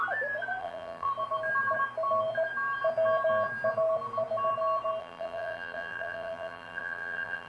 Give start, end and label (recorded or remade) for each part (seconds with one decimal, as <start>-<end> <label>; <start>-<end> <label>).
0.0-0.6 recorded; 0.6-1.1 remade; 1.1-5.0 recorded; 5.0-7.5 remade